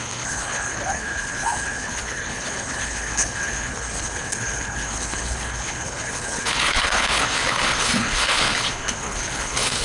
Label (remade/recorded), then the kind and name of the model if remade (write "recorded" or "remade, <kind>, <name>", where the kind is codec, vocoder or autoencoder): remade, codec, HILCodec